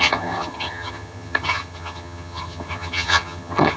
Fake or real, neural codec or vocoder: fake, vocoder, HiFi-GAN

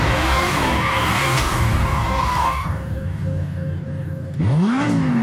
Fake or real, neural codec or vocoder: fake, codec, DAC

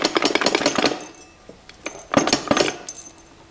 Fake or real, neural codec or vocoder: real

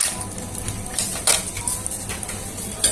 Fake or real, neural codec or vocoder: real